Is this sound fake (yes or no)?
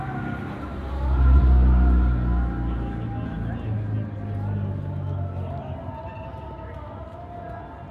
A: no